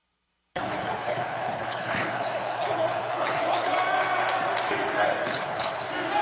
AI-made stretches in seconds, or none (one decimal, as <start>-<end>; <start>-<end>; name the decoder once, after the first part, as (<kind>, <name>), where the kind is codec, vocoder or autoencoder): 0.0-3.7 (codec, HILCodec); 5.2-5.8

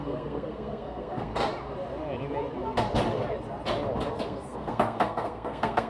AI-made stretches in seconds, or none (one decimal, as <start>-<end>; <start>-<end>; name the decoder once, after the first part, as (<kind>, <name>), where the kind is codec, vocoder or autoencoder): 0.0-1.3 (codec, SNAC); 4.1-5.9

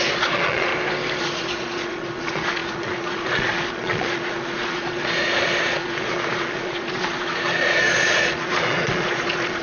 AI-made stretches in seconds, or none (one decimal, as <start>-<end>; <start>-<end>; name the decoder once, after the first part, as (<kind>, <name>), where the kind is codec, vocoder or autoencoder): 0.0-0.7 (vocoder, Vocos); 1.2-9.6

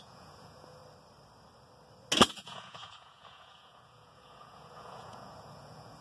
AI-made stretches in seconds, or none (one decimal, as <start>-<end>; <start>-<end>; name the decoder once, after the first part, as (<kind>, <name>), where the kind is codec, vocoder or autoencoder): 0.0-0.8 (vocoder, Vocos); 2.3-6.0

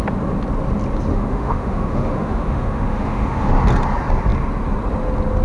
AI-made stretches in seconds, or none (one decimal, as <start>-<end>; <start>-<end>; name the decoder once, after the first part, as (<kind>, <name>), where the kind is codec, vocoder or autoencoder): 1.1-3.5 (autoencoder, DAC-VAE)

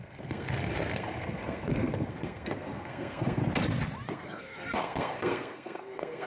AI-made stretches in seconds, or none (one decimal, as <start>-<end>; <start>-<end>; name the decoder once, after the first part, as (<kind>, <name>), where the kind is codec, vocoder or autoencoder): 0.0-3.4 (codec, SNAC); 4.1-6.3

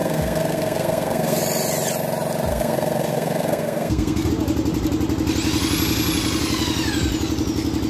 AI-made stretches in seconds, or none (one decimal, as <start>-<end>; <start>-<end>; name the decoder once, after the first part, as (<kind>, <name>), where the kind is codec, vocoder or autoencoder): 0.0-1.4 (codec, SNAC); 2.5-4.3

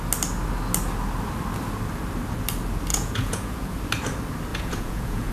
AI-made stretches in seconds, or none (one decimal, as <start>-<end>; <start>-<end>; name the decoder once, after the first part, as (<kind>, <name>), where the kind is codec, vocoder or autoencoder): 2.9-3.8 (vocoder, Vocos); 4.5-5.3